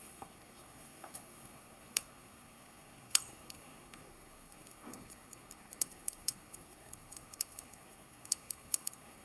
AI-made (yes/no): yes